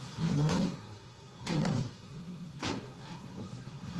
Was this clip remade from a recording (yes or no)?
yes